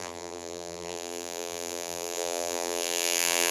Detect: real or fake fake